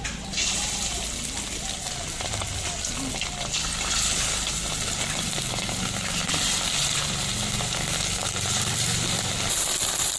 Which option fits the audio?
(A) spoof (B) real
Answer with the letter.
B